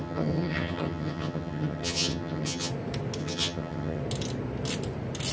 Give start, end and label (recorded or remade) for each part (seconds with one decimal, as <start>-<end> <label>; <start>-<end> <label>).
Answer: 0.0-2.7 remade; 2.7-3.2 recorded; 3.2-4.0 remade; 4.0-5.3 recorded